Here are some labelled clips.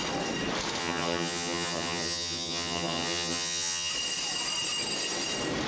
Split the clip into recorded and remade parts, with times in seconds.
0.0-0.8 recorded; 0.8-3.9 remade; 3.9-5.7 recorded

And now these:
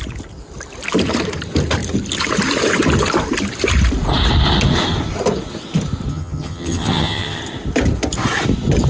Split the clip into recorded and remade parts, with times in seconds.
0.0-6.1 recorded; 6.1-7.4 remade; 7.4-8.9 recorded

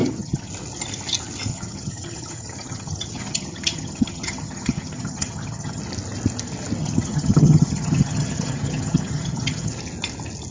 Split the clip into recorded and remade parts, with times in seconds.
0.0-0.5 remade; 0.5-1.5 recorded; 1.5-5.8 remade; 5.8-6.8 recorded; 6.8-9.7 remade; 9.7-10.5 recorded

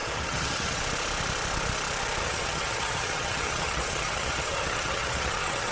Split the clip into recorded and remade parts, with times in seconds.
0.0-0.8 remade; 0.8-2.2 recorded; 2.2-5.7 remade

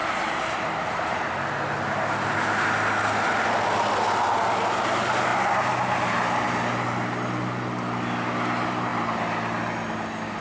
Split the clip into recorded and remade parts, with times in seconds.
0.0-10.4 recorded

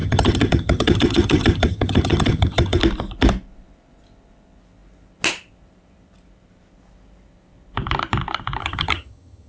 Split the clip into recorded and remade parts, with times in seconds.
0.0-2.8 remade; 2.8-8.6 recorded; 8.6-9.5 remade

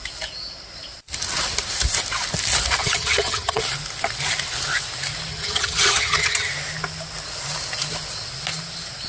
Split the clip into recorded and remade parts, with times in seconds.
0.0-2.8 recorded; 2.8-3.6 remade; 3.6-5.3 recorded; 5.3-6.5 remade; 6.5-9.1 recorded

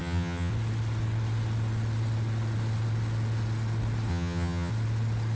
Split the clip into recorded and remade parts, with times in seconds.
0.0-0.5 remade; 0.5-4.1 recorded; 4.1-4.7 remade; 4.7-5.4 recorded